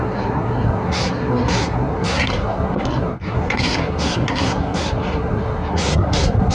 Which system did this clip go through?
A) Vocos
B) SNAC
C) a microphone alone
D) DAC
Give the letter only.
B